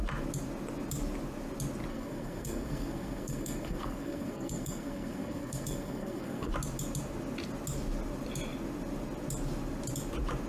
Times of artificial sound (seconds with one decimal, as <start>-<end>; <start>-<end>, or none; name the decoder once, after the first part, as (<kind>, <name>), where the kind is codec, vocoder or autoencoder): 1.9-6.5 (codec, SNAC)